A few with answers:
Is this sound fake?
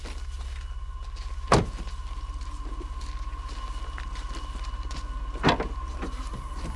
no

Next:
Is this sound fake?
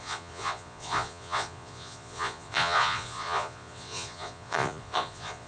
yes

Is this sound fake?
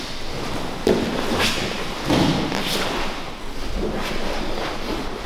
no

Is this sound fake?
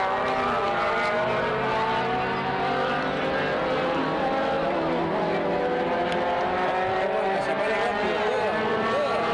no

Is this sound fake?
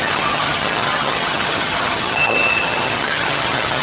yes